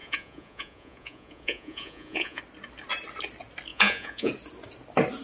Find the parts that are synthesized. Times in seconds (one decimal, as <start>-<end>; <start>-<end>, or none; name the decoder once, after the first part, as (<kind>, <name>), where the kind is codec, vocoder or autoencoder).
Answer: 0.0-2.4 (vocoder, Vocos); 3.7-4.3